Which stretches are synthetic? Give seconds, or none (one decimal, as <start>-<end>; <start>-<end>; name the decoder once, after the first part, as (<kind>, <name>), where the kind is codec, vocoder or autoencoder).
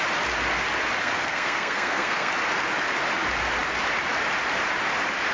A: 1.0-2.3 (codec, SNAC)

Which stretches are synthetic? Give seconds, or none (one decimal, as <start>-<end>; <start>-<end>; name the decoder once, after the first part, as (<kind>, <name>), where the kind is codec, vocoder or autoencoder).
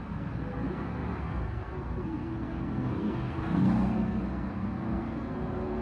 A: 0.0-5.8 (codec, SNAC)